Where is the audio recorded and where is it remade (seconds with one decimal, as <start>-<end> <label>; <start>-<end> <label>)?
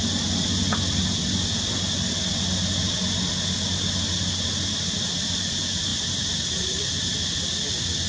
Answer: 0.0-8.1 recorded